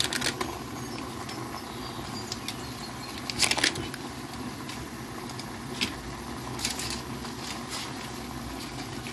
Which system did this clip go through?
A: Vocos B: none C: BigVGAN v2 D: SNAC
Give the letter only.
B